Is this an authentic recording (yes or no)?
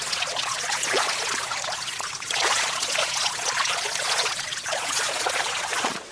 no